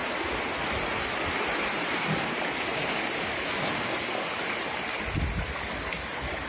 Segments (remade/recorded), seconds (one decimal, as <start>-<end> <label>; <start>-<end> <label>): 0.0-2.2 remade; 2.2-2.7 recorded; 2.7-3.7 remade; 3.7-6.5 recorded